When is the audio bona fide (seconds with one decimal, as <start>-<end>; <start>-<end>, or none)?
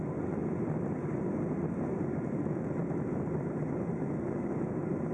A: 0.0-5.1